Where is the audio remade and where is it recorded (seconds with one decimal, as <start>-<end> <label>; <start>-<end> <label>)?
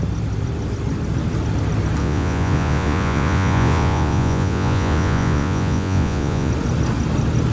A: 0.0-2.0 recorded; 2.0-6.5 remade; 6.5-7.5 recorded